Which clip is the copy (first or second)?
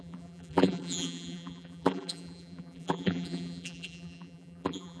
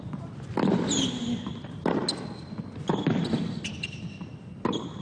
first